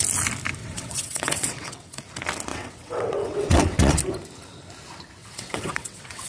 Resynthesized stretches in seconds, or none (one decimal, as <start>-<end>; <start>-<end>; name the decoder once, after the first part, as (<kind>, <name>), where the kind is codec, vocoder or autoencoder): 0.6-2.0 (vocoder, WaveNeXt); 2.5-4.0; 5.2-6.3